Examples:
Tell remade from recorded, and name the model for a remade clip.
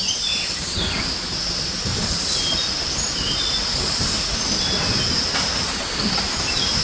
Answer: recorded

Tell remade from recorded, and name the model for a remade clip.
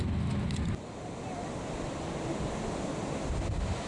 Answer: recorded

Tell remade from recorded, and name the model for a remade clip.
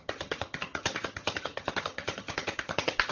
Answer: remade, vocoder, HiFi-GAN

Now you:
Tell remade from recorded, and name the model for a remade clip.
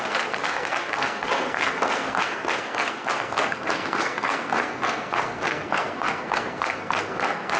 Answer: remade, codec, SNAC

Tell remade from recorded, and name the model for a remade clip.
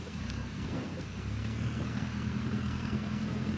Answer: remade, codec, SNAC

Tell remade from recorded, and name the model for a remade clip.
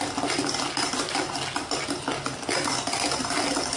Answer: recorded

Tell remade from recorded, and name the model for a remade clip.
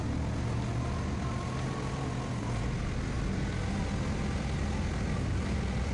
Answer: recorded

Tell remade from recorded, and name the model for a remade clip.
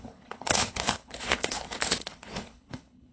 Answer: remade, codec, HILCodec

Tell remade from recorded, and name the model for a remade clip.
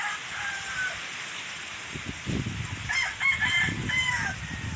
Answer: recorded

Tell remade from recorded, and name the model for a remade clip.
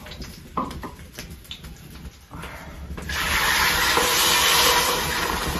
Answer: recorded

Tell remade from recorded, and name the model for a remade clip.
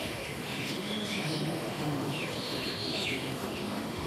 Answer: remade, autoencoder, DAC-VAE